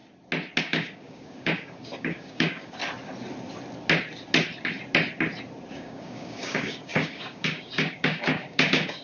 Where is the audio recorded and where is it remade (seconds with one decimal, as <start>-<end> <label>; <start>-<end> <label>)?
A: 0.0-0.6 recorded; 0.6-2.8 remade; 2.8-5.7 recorded; 5.7-9.0 remade